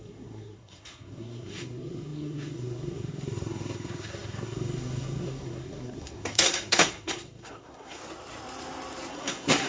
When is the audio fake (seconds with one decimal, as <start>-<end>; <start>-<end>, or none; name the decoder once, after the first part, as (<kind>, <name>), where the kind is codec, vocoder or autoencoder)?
0.0-8.0 (codec, SNAC); 9.1-9.7